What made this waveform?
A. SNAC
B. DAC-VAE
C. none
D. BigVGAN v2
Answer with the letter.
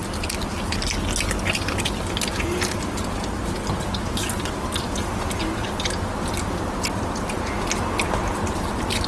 C